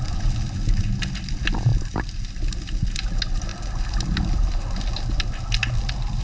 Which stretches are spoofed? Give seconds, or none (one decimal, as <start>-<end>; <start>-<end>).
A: none